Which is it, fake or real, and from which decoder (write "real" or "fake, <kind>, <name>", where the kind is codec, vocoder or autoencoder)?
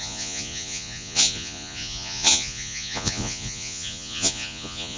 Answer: fake, vocoder, Vocos